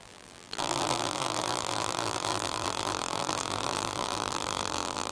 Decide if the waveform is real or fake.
fake